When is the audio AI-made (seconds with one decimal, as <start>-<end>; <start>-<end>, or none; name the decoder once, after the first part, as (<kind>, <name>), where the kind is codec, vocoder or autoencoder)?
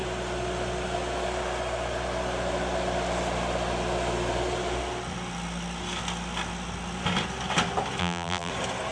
8.0-8.5 (vocoder, BigVGAN v2)